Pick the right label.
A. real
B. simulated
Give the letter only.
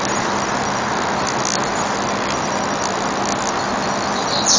A